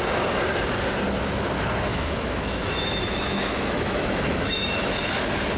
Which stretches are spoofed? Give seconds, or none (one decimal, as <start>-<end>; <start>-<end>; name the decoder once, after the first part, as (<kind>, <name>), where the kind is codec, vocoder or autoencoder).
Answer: 1.9-4.9 (autoencoder, DAC-VAE)